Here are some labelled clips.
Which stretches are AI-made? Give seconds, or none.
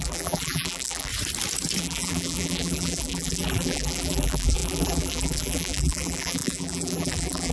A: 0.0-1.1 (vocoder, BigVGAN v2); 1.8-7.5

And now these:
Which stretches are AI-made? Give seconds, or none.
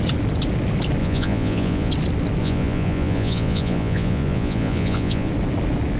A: 1.0-1.9 (vocoder, Vocos); 2.4-5.3